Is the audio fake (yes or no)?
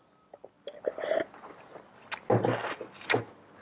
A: no